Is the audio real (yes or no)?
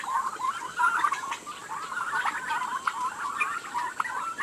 yes